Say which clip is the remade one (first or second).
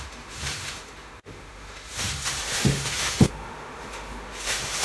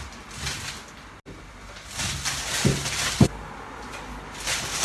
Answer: first